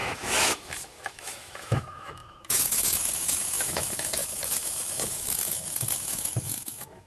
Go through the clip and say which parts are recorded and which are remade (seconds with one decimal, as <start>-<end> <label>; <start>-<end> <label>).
0.0-7.1 remade